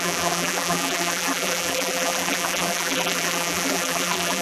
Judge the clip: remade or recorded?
remade